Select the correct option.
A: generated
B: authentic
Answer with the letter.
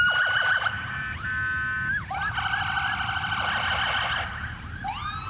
B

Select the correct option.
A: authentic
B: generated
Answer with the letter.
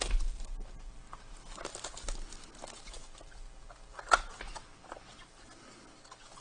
A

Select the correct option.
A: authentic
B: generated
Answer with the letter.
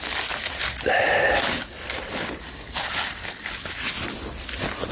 A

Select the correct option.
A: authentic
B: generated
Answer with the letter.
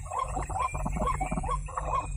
B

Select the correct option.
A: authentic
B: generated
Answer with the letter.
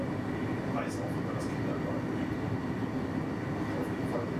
A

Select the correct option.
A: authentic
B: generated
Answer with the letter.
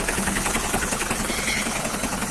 B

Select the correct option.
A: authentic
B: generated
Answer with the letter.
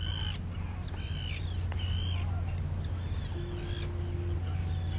A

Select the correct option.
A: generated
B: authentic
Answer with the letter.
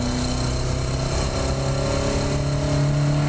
B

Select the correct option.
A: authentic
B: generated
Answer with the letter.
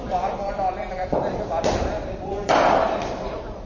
B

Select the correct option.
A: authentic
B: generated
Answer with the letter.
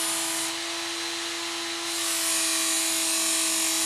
A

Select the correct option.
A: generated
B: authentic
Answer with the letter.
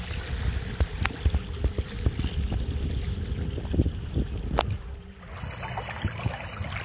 B